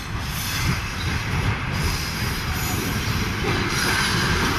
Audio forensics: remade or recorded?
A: recorded